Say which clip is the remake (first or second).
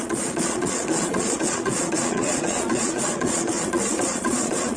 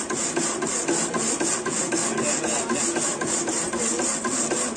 first